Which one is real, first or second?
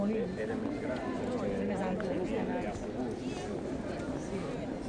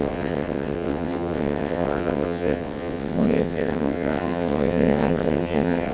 first